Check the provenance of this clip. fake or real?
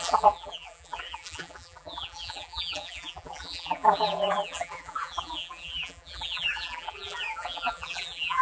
fake